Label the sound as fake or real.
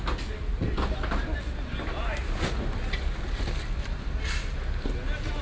real